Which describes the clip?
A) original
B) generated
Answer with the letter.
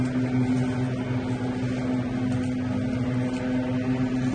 A